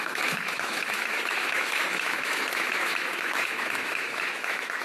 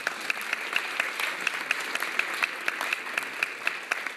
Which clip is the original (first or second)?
second